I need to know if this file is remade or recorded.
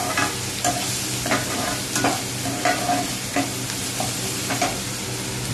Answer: recorded